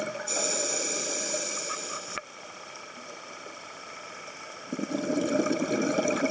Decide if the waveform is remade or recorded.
recorded